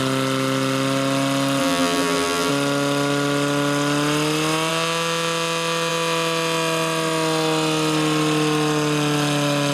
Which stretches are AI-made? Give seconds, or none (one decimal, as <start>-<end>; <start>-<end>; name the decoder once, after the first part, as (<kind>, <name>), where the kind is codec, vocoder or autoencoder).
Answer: 1.6-2.5 (vocoder, BigVGAN v2)